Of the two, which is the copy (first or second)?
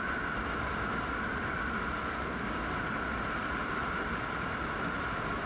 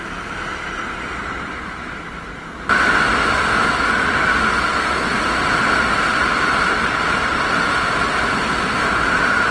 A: first